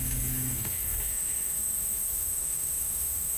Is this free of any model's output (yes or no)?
no